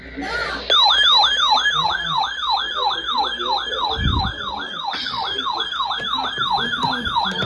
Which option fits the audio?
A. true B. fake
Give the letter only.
A